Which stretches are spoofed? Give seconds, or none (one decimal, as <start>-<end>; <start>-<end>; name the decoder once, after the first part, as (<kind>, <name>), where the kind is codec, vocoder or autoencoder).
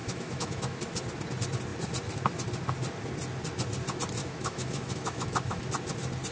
0.0-0.8 (autoencoder, DAC-VAE); 4.2-5.6